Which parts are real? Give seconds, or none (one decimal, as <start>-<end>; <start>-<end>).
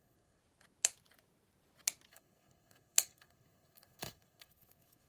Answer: 0.4-2.1